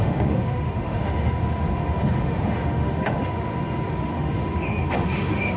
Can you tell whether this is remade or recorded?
remade